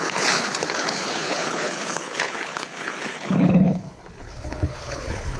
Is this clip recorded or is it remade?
remade